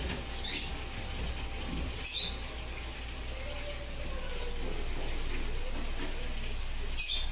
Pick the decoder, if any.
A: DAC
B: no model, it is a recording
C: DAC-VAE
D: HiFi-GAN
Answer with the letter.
B